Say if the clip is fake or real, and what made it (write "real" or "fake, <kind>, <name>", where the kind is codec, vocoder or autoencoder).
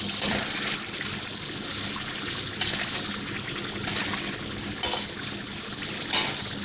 real